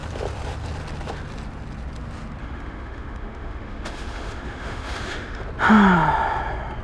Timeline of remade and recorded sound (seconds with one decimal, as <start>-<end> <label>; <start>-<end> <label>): 0.0-2.4 recorded; 2.4-5.4 remade; 5.4-6.8 recorded